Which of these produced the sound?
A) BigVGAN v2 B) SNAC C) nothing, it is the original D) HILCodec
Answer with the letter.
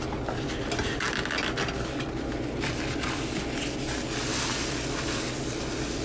C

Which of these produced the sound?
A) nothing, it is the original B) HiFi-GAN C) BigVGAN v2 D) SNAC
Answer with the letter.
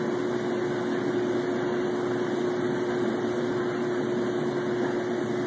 A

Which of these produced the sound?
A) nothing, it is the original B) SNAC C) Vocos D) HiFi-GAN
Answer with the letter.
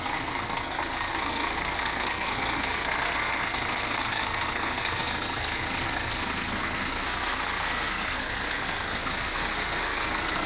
B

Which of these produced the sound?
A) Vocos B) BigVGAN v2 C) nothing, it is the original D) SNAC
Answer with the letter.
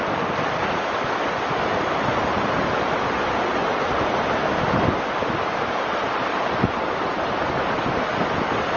B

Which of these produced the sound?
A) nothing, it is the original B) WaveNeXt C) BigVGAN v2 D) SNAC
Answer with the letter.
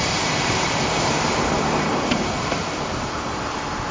C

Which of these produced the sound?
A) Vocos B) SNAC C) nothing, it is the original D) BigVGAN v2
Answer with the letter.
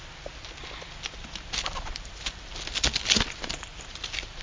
C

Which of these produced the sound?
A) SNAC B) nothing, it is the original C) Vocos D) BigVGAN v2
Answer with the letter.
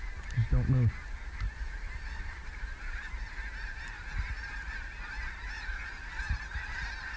B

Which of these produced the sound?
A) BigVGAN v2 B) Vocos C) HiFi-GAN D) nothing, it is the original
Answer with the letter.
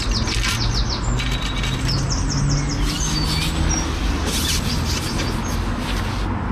D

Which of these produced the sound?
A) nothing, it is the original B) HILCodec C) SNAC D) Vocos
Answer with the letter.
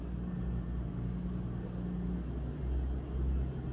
A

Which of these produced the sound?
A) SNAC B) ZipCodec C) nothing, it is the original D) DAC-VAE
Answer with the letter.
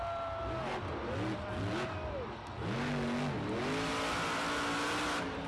C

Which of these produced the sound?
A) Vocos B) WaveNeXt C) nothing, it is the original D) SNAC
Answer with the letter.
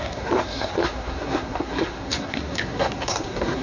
D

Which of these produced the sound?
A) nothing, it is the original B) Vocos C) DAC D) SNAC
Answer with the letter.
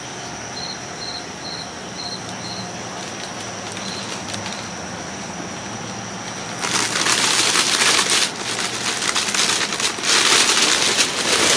A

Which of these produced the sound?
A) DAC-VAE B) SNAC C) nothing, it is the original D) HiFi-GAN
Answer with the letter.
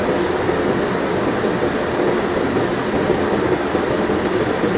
C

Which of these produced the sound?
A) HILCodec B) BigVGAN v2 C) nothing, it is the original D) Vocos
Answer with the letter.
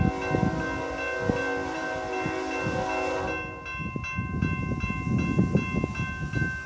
C